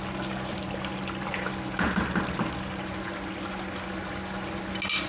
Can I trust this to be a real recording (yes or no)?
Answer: yes